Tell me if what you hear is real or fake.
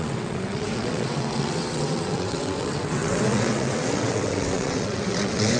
fake